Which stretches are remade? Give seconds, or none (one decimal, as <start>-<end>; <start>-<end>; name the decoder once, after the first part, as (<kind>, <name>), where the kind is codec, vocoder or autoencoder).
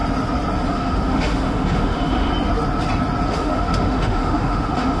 0.7-2.3 (autoencoder, DAC-VAE); 3.3-5.0